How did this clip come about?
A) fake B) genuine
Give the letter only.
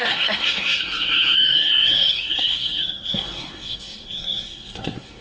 A